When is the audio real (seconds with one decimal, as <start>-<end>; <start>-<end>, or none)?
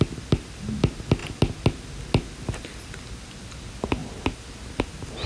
0.0-5.3